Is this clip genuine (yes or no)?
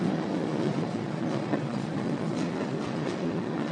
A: no